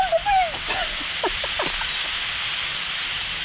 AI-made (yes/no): no